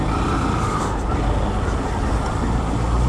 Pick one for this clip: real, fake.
real